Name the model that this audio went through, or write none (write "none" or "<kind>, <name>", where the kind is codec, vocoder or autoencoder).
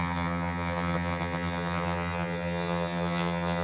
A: vocoder, HiFi-GAN